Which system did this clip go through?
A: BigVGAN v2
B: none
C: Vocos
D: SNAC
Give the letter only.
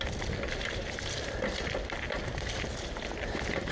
B